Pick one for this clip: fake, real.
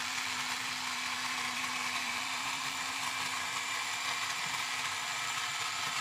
fake